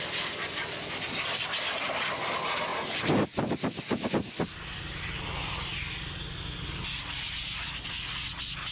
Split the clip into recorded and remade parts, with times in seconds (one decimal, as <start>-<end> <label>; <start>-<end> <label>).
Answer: 0.0-8.7 recorded